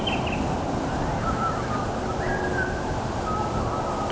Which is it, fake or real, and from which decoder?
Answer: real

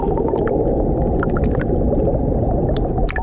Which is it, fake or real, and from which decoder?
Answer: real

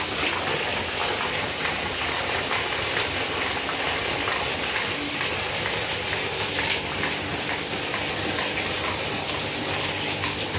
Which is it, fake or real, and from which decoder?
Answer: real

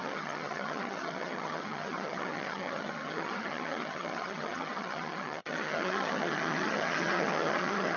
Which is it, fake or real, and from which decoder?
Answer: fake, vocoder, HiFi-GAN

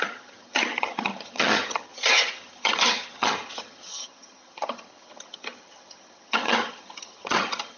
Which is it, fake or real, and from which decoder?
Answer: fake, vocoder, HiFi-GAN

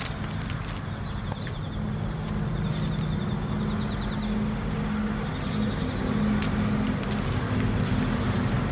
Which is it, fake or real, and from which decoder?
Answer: real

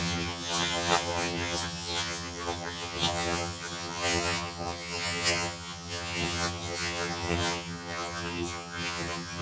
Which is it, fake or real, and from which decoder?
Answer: fake, vocoder, HiFi-GAN